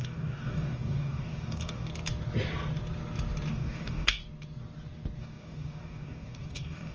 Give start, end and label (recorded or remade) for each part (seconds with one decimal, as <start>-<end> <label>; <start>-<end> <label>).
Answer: 0.0-1.9 remade; 1.9-3.5 recorded; 3.5-4.2 remade; 4.2-5.2 recorded; 5.2-6.9 remade